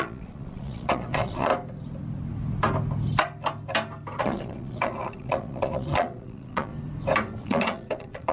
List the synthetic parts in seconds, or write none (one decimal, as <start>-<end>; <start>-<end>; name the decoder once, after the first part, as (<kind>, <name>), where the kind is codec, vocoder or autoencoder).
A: 0.0-1.5 (vocoder, Vocos); 4.2-6.7; 7.4-8.3